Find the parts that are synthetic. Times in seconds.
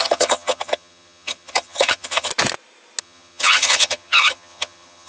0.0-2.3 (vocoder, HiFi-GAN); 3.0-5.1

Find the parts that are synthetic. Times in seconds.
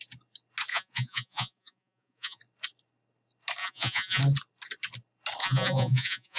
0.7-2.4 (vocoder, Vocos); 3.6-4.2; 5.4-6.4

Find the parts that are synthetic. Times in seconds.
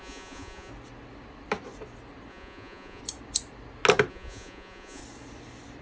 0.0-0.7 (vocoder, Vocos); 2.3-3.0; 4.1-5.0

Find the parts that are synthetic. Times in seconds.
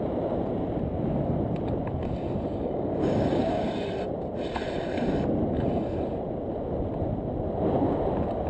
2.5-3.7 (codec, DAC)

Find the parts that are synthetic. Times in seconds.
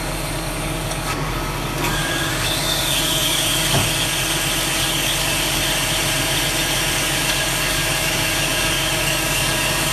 0.0-3.8 (codec, DAC); 4.6-5.6; 6.9-9.9